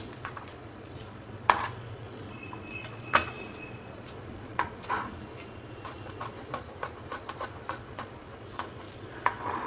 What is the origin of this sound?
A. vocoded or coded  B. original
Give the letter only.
A